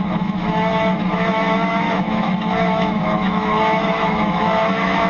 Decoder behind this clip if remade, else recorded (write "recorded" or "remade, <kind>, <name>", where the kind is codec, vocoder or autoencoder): remade, autoencoder, DAC-VAE